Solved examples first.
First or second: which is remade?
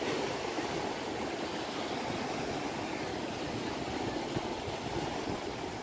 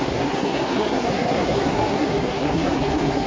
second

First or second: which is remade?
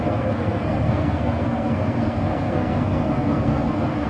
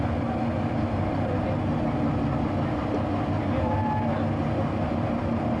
first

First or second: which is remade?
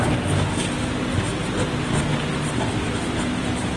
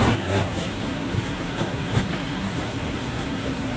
second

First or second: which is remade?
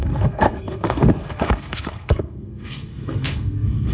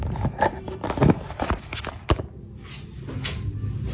first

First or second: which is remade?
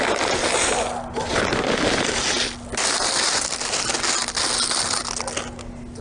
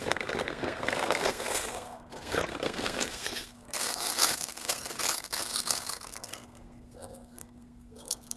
second